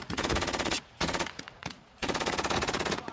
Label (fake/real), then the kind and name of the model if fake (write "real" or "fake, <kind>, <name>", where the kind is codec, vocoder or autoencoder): fake, vocoder, Vocos